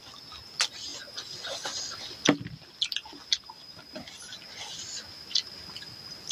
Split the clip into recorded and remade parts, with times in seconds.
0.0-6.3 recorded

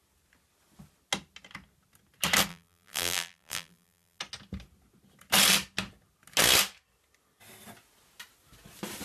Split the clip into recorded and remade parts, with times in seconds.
0.0-2.5 recorded; 2.5-4.2 remade; 4.2-9.0 recorded

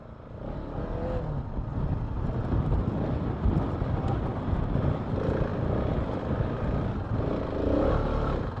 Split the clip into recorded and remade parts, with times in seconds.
0.0-1.7 recorded; 1.7-4.4 remade; 4.4-5.5 recorded; 5.5-6.2 remade; 6.2-8.6 recorded

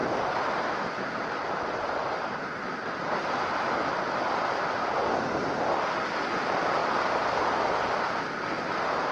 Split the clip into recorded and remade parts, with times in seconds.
0.0-2.7 remade; 2.7-9.1 recorded

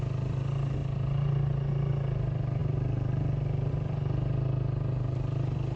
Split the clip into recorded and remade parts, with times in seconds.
0.0-5.8 recorded

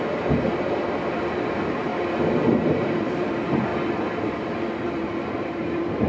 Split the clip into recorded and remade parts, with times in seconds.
0.0-1.9 remade; 1.9-2.6 recorded; 2.6-3.7 remade; 3.7-4.8 recorded; 4.8-6.1 remade

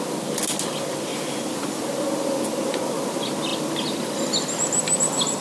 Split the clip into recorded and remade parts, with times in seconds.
0.0-1.1 recorded; 1.1-1.8 remade; 1.8-5.4 recorded